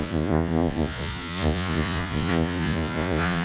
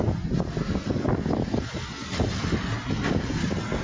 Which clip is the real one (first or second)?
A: second